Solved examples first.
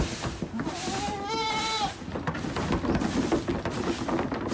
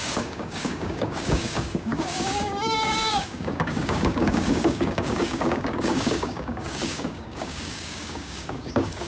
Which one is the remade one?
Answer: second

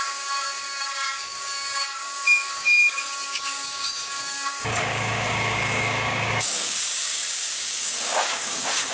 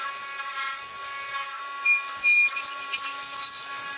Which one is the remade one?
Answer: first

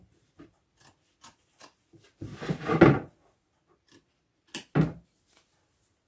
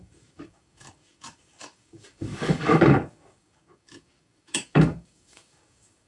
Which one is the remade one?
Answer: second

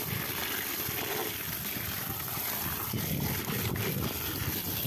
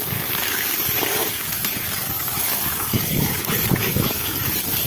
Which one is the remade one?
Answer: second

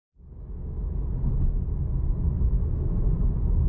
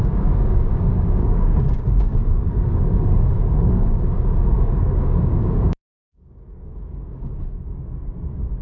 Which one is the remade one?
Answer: second